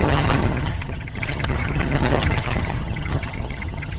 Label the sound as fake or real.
fake